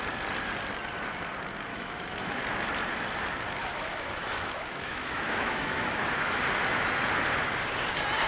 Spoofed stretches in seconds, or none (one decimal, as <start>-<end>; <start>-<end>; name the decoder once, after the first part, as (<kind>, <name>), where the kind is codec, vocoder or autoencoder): 1.7-2.4 (autoencoder, DAC-VAE); 3.6-6.3